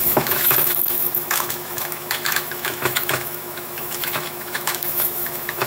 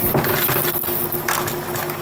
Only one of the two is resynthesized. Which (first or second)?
first